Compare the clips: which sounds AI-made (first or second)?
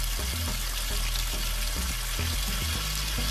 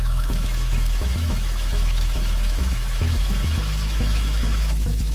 second